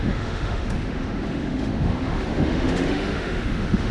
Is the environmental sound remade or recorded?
remade